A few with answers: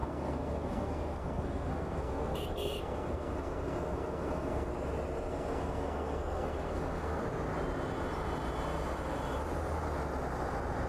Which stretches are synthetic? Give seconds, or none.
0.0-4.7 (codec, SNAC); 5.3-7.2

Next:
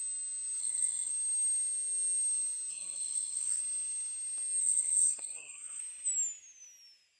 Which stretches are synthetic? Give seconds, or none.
0.6-1.1 (codec, SNAC); 2.7-3.6; 4.6-5.8

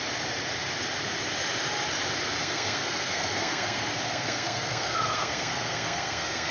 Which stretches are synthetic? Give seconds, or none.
2.4-6.5 (codec, SNAC)